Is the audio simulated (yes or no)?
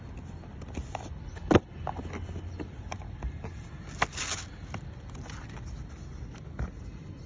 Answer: no